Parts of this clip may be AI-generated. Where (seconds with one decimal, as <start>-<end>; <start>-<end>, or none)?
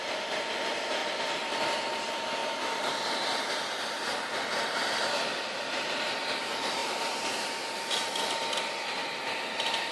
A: 1.0-2.0